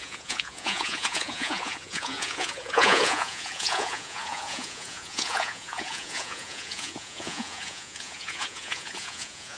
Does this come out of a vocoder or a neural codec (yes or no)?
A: yes